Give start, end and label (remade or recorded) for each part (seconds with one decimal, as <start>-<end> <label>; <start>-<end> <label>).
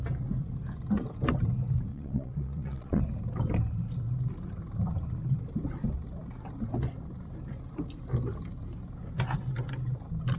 0.0-1.9 recorded; 1.9-3.0 remade; 3.0-10.4 recorded